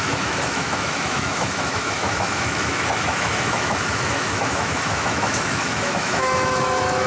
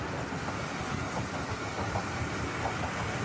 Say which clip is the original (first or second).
second